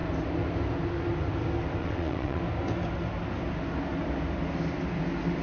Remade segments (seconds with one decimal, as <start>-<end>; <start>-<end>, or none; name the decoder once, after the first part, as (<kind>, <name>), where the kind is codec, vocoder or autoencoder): 1.8-2.4 (vocoder, WaveNeXt)